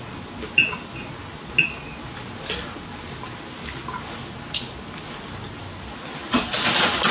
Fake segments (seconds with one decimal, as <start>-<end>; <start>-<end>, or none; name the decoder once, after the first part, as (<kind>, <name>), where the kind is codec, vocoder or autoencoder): none